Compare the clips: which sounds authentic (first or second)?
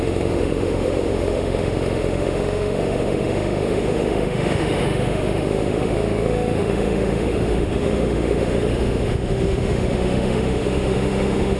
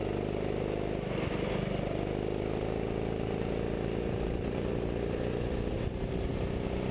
second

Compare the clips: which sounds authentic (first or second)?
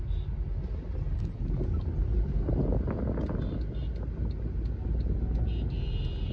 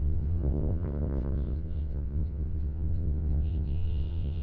first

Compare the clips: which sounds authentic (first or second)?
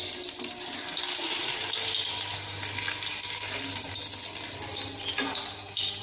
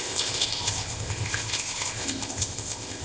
first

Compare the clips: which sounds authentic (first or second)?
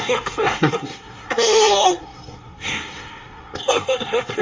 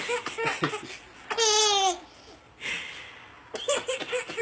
second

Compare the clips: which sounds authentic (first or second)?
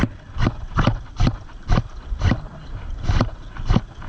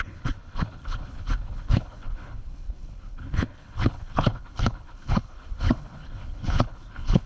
first